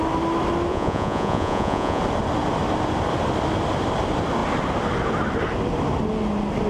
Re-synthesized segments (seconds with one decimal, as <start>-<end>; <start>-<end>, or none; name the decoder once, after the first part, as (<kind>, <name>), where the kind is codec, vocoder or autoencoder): 0.7-2.0 (vocoder, Vocos)